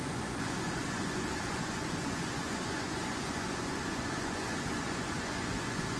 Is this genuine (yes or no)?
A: no